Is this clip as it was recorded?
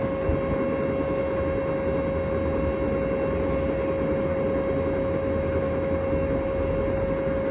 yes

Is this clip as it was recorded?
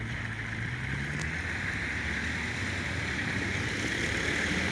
yes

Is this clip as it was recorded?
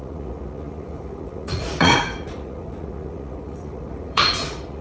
no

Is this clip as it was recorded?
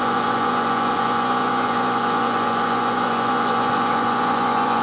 no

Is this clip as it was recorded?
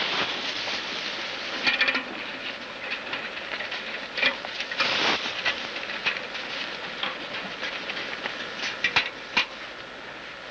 yes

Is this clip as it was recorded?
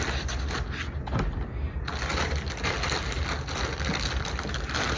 yes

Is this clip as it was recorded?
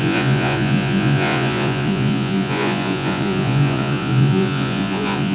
no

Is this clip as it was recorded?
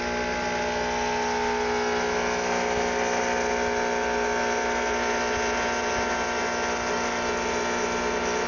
yes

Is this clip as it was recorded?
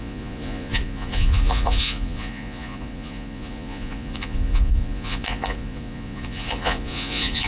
no